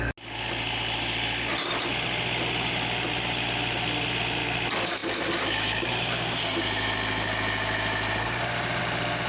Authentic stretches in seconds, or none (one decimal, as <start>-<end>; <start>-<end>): 0.0-9.3